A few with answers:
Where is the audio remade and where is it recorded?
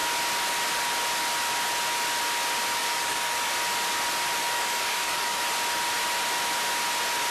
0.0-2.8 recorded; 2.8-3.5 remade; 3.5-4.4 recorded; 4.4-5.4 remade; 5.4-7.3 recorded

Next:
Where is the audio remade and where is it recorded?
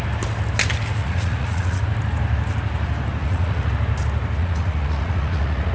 0.0-1.0 recorded; 1.0-1.8 remade; 1.8-3.2 recorded; 3.2-3.7 remade; 3.7-4.4 recorded; 4.4-5.7 remade